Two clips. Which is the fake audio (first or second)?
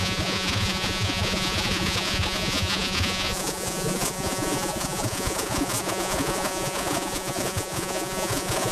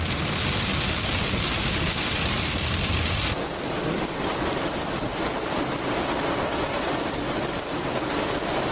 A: first